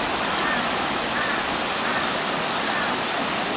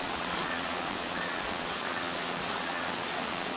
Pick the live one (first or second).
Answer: first